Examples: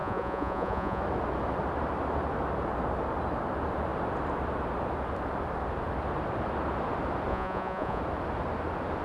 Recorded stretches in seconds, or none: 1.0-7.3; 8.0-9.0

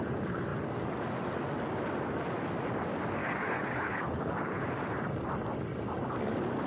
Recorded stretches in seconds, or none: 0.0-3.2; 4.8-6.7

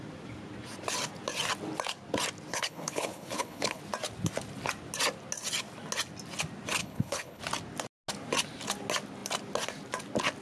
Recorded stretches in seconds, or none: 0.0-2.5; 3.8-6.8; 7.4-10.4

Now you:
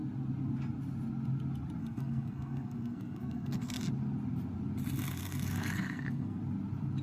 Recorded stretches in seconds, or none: 0.0-1.8; 3.8-5.2; 6.4-7.0

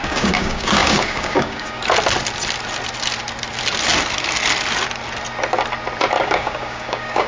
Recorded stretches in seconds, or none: 1.8-6.2

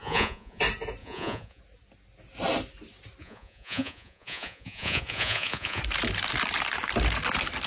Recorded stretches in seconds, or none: 0.6-1.0; 1.6-3.2; 5.8-7.7

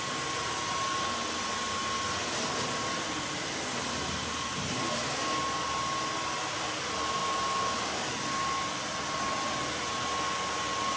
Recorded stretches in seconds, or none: 0.0-11.0

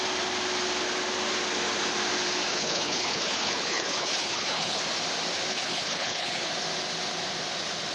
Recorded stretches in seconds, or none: 0.0-2.5; 4.8-5.5; 6.5-7.9